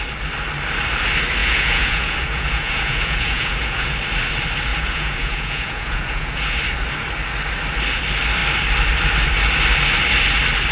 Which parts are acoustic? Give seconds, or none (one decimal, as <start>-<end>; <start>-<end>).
0.0-1.4; 3.9-4.7; 6.6-10.7